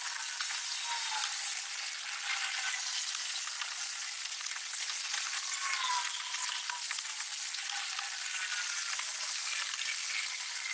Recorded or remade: recorded